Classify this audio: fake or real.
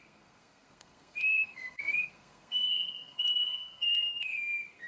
fake